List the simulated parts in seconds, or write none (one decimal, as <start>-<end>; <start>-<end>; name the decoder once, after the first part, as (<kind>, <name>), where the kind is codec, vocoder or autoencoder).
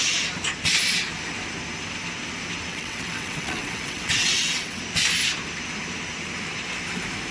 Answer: 2.7-4.8 (vocoder, WaveNeXt)